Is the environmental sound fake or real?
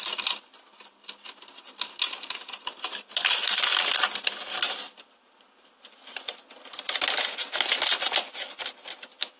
real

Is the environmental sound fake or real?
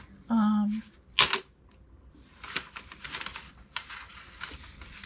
real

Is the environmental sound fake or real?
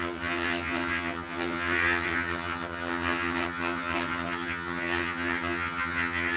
fake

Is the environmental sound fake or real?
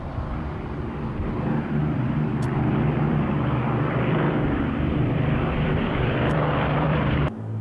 fake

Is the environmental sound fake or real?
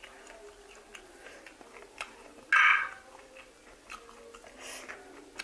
real